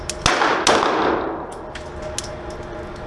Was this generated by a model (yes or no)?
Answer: no